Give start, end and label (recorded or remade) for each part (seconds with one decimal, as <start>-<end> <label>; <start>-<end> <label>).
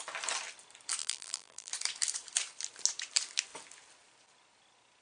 0.0-1.0 recorded; 1.0-1.7 remade; 1.7-5.0 recorded